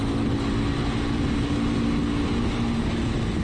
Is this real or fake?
real